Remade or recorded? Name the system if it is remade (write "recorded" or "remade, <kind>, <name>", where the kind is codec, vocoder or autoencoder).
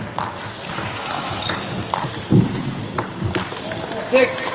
recorded